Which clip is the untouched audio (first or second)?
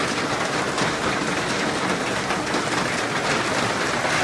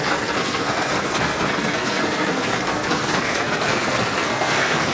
first